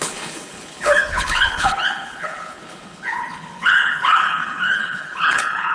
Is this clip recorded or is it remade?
remade